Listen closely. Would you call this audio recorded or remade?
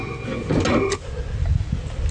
recorded